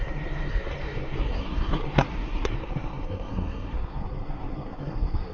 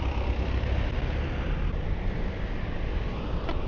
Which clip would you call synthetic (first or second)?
first